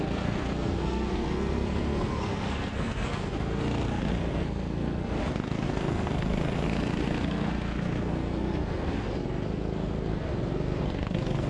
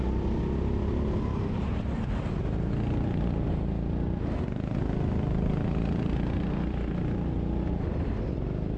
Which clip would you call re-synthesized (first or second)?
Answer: first